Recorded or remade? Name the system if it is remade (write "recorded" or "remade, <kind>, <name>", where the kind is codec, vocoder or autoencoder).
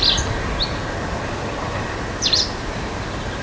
recorded